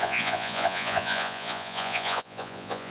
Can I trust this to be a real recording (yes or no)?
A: no